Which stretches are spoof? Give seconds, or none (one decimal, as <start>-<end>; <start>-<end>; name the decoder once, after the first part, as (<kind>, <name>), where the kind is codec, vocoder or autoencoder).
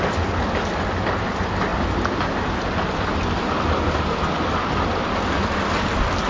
none